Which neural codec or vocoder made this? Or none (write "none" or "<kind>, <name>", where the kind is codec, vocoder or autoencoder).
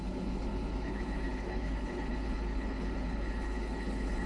codec, HILCodec